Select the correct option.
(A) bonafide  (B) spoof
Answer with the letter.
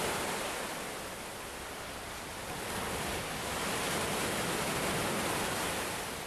A